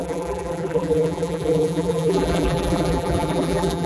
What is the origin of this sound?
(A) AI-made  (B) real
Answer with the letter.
A